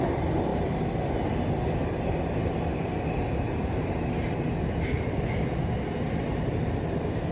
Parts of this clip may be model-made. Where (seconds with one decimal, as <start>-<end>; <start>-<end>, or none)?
none